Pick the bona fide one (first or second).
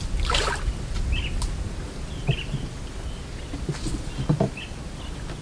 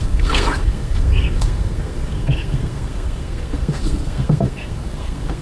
first